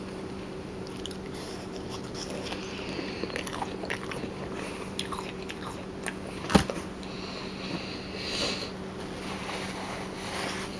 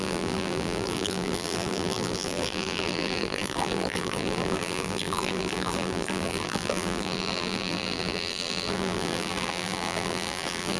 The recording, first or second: first